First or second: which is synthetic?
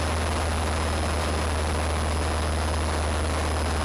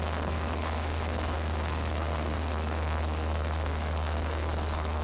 second